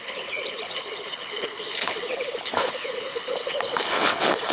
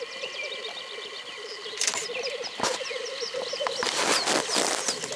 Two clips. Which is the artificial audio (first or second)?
first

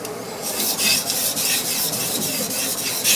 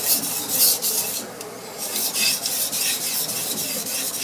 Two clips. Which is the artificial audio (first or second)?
first